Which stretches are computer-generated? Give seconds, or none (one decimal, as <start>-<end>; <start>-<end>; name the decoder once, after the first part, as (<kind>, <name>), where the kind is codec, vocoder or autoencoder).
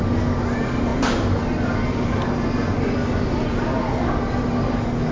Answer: none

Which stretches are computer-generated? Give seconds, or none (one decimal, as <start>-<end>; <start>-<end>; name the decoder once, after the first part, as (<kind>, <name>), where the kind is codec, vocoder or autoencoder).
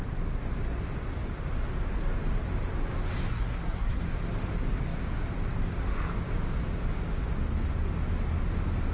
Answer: 3.3-4.0 (codec, SNAC)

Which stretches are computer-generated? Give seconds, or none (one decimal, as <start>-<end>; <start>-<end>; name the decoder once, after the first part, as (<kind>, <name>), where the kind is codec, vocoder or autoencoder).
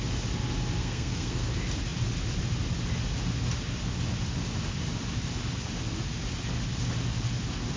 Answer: 0.8-1.5 (codec, SNAC)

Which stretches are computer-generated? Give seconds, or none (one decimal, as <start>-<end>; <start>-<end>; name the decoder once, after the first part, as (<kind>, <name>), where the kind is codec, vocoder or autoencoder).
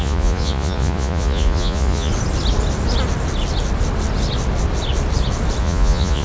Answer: 0.0-2.1 (vocoder, Vocos); 5.6-6.2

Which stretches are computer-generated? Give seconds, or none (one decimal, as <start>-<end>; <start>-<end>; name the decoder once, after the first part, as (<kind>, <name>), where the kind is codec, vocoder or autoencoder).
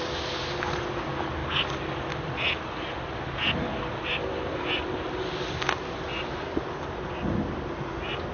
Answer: none